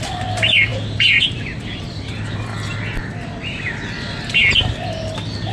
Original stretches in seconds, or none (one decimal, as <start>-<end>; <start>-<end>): 2.5-5.5